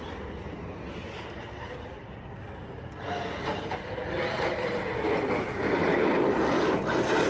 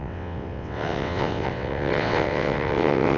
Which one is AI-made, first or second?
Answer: second